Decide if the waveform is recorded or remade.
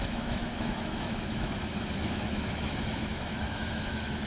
remade